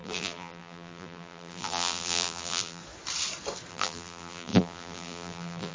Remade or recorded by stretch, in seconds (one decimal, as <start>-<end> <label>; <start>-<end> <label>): 0.0-2.8 remade; 2.8-3.7 recorded; 3.7-5.7 remade